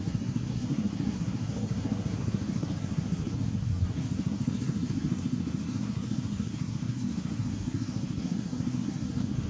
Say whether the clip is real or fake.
fake